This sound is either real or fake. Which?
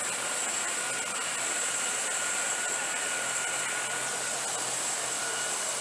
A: real